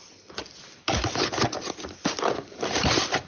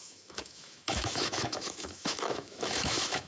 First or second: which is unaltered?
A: first